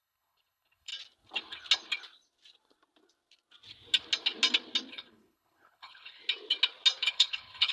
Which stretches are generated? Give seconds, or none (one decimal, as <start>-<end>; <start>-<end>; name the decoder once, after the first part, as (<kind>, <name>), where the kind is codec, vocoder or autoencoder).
0.0-0.9 (codec, HILCodec); 4.9-6.2; 7.1-7.7